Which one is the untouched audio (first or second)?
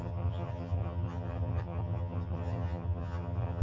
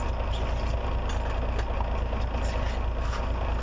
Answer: second